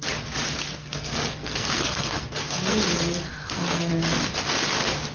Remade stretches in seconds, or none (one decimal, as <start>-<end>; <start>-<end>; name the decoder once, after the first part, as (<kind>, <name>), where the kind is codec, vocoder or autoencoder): 0.8-3.9 (codec, SNAC)